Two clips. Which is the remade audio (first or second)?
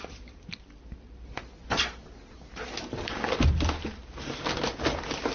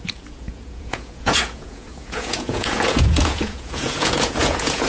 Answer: second